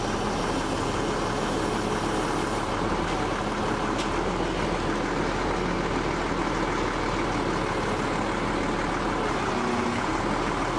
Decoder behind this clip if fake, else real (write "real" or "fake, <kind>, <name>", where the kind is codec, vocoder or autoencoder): real